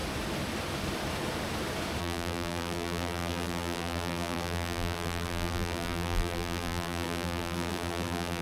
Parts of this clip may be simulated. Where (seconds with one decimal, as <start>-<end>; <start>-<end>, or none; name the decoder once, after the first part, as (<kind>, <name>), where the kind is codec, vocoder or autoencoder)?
2.0-8.4 (vocoder, BigVGAN v2)

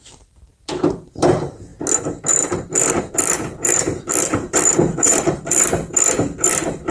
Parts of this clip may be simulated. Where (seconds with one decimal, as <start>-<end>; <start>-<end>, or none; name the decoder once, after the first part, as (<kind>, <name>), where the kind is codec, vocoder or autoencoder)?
0.0-1.7 (vocoder, BigVGAN v2); 3.1-6.9

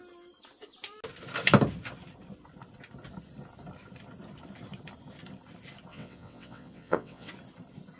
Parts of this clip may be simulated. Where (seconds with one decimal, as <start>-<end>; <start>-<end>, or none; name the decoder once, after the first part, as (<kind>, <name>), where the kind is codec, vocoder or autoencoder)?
5.9-7.3 (vocoder, WaveNeXt)

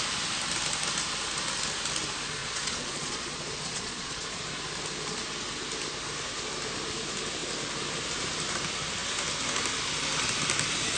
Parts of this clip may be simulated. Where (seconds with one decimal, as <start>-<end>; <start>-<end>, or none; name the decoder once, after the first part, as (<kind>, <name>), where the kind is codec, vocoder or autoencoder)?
2.4-4.4 (vocoder, Vocos)

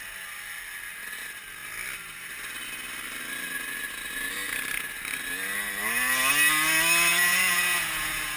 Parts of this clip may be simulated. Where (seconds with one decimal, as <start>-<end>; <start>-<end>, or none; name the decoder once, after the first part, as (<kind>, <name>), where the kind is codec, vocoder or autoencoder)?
7.1-8.4 (vocoder, Vocos)

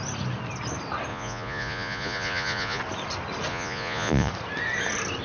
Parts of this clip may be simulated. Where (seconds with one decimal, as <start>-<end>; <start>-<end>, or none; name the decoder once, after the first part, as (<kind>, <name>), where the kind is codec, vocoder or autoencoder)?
1.1-2.8 (vocoder, Vocos); 3.5-4.3

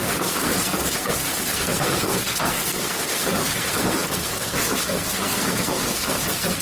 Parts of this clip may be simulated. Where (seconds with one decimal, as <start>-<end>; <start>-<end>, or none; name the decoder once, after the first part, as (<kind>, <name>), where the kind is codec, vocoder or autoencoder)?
0.0-6.6 (codec, SNAC)

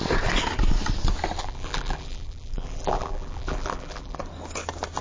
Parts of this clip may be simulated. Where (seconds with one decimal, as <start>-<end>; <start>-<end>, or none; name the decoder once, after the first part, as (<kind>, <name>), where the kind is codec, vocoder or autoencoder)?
1.4-4.2 (vocoder, BigVGAN v2)